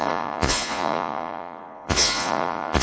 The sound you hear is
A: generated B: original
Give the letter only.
A